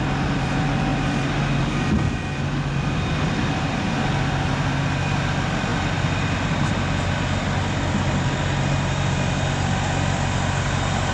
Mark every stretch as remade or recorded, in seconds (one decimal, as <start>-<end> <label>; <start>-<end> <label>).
0.0-11.1 recorded